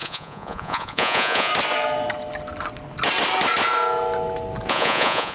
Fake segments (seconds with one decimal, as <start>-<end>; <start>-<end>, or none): 0.0-1.5; 4.7-5.3